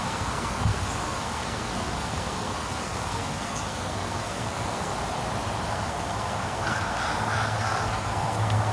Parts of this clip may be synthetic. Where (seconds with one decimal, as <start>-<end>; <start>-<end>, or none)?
0.0-4.9; 5.7-8.7